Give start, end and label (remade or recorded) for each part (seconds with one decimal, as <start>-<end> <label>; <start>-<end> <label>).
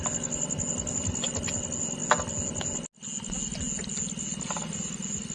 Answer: 0.0-5.3 recorded